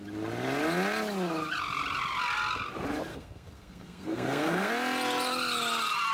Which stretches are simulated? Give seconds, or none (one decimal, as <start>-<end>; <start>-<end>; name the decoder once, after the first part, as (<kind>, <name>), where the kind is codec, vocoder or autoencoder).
3.1-4.7 (codec, SNAC)